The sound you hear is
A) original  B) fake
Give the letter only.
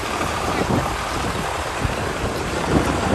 A